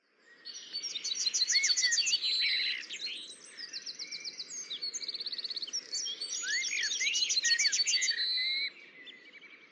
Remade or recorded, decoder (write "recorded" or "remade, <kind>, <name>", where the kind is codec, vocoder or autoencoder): recorded